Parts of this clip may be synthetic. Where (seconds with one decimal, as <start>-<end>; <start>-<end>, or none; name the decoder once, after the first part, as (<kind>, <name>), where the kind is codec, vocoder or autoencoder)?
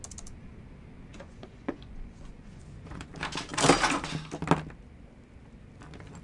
1.1-3.1 (vocoder, Vocos)